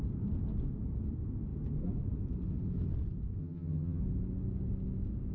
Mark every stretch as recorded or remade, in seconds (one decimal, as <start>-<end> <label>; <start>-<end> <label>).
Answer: 0.0-3.4 recorded; 3.4-4.0 remade; 4.0-5.3 recorded